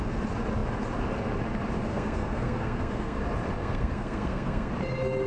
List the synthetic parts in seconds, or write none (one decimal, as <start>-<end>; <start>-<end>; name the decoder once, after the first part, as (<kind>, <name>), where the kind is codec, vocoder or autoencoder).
1.9-3.2 (codec, SNAC); 3.6-4.7